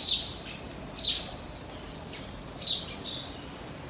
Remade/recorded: recorded